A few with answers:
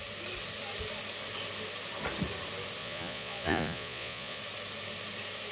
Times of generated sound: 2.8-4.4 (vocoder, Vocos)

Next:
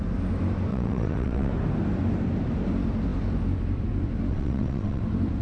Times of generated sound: 0.7-1.5 (vocoder, WaveNeXt); 4.3-5.0